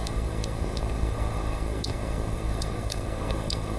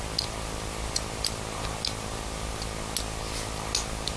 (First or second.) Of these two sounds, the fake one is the first